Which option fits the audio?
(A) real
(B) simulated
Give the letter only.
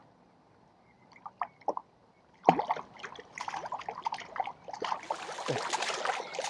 A